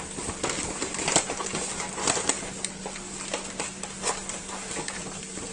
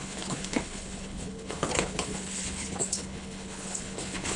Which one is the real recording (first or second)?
first